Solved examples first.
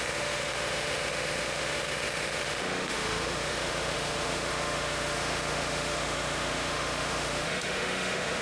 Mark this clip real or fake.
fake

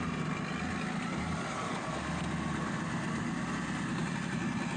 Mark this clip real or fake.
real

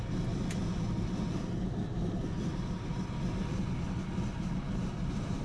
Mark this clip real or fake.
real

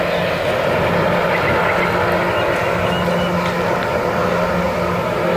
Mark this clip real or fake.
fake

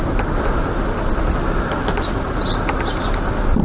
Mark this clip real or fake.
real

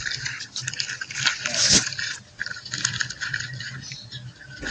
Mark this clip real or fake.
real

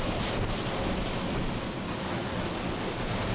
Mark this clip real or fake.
real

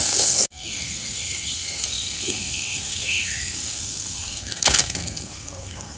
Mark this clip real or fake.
fake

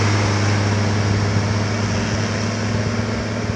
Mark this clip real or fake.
real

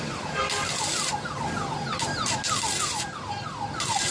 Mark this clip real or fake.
real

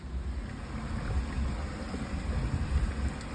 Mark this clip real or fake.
real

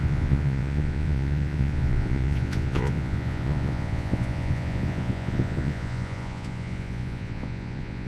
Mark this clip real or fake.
fake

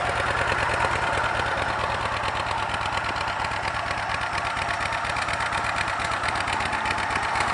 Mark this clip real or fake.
real